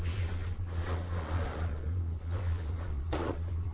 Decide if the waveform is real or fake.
fake